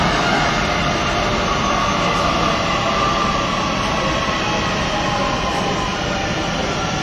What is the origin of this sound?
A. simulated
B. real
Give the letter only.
B